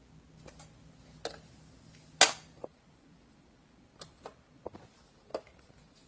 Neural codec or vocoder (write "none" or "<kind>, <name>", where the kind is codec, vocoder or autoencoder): none